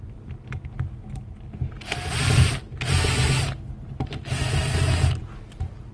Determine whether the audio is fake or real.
real